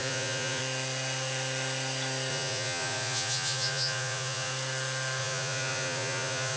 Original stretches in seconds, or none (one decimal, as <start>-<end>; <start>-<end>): 0.6-2.3; 4.5-5.2